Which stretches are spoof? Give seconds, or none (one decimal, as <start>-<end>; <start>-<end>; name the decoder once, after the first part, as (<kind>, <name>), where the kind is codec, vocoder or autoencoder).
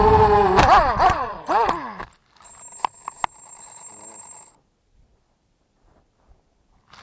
1.1-1.7 (vocoder, Vocos)